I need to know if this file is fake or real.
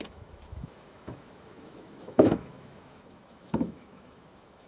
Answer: fake